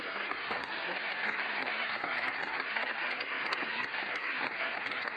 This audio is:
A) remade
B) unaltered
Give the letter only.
A